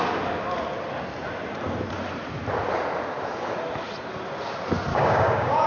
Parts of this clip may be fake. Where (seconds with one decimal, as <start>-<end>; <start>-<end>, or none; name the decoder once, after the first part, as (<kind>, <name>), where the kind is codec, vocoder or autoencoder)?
4.9-5.7 (codec, DAC)